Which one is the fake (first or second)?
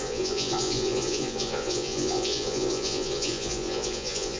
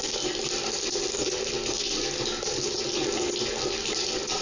first